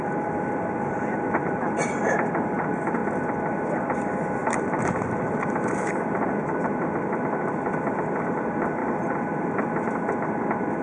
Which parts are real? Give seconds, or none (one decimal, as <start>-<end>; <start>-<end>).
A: 3.0-4.0

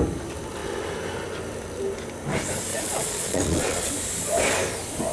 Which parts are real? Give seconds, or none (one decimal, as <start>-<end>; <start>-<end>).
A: 0.0-2.7; 3.9-5.1

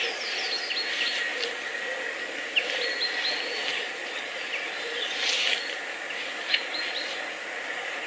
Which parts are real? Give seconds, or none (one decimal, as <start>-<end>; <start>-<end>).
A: 0.0-8.1

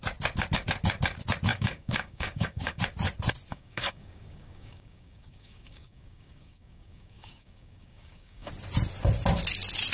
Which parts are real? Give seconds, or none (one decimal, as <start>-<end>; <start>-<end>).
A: 0.0-1.5; 2.8-3.5; 8.5-9.9

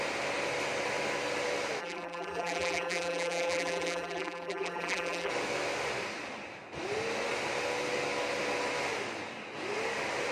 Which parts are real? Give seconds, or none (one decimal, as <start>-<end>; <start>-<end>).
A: 0.0-1.8; 5.3-10.3

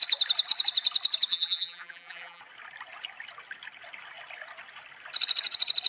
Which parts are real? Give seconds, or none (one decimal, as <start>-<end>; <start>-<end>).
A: 0.0-1.3; 2.4-5.9

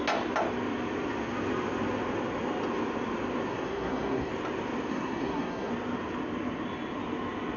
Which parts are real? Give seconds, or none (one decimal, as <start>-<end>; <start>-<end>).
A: 0.0-3.5; 4.3-4.9; 5.7-7.6